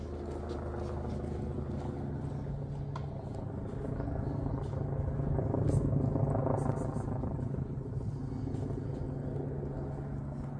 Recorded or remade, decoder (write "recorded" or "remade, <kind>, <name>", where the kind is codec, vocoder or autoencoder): recorded